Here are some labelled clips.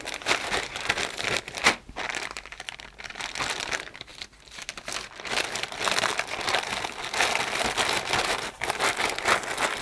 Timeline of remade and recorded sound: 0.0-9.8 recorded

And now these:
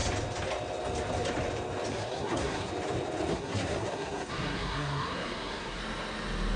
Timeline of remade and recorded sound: 0.0-1.9 recorded; 1.9-2.7 remade; 2.7-3.3 recorded; 3.3-5.8 remade; 5.8-6.6 recorded

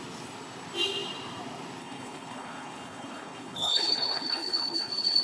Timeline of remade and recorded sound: 0.0-1.8 recorded; 1.8-5.2 remade

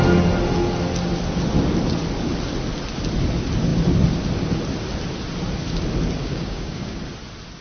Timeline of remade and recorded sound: 0.0-6.2 recorded; 6.2-7.0 remade; 7.0-7.6 recorded

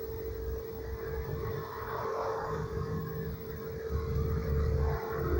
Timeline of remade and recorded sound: 0.0-0.7 recorded; 0.7-3.5 remade; 3.5-4.4 recorded; 4.4-4.9 remade; 4.9-5.4 recorded

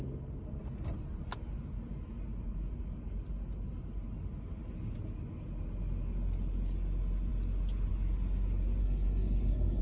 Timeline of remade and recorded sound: 0.0-8.8 recorded; 8.8-9.8 remade